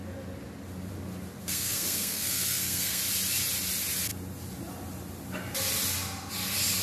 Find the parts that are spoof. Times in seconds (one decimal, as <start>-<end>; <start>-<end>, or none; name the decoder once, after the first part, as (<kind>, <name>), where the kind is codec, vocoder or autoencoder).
1.4-3.0 (codec, SNAC)